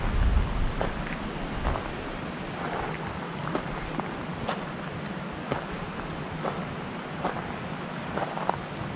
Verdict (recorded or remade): recorded